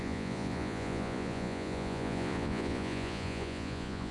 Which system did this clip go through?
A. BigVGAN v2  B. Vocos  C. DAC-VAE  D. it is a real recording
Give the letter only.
B